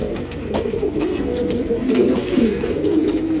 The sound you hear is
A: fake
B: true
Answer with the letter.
A